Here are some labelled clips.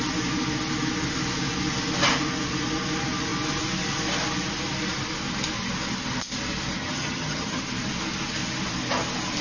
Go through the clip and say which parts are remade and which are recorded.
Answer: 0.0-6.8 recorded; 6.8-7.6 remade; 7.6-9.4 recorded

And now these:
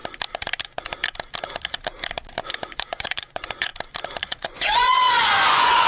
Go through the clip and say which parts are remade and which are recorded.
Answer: 0.0-2.5 recorded; 2.5-3.7 remade; 3.7-4.2 recorded; 4.2-5.9 remade

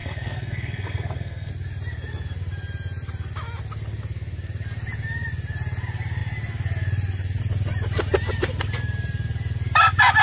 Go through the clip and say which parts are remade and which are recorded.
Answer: 0.0-1.5 remade; 1.5-10.2 recorded

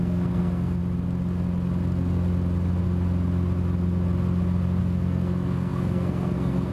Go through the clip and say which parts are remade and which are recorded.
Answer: 0.0-0.8 remade; 0.8-4.8 recorded; 4.8-6.7 remade

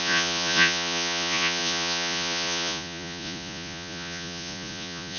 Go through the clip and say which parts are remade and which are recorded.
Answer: 0.0-5.2 remade

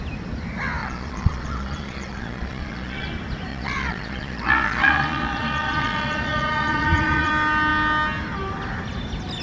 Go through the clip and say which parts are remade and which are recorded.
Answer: 0.0-0.8 recorded; 0.8-3.1 remade; 3.1-3.5 recorded; 3.5-7.3 remade; 7.3-9.4 recorded